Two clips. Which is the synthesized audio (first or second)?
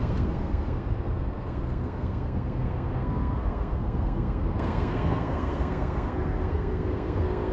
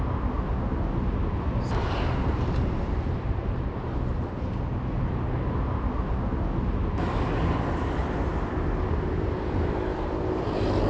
first